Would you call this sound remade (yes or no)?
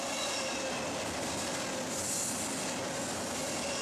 no